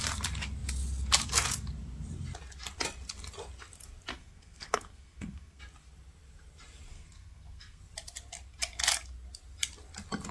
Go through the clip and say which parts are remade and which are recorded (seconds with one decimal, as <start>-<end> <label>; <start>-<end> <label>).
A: 0.0-4.1 recorded; 4.1-5.6 remade; 5.6-6.9 recorded; 6.9-7.8 remade; 7.8-10.3 recorded